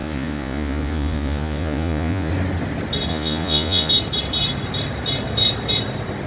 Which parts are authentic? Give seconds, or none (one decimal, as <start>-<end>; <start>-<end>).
2.3-3.1; 3.9-6.3